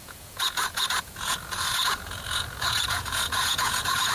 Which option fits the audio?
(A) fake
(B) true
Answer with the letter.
A